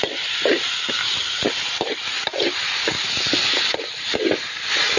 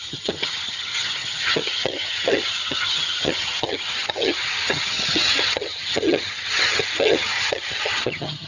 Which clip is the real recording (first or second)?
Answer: first